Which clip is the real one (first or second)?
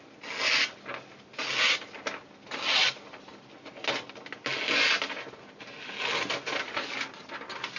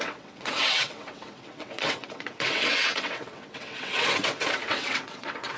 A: first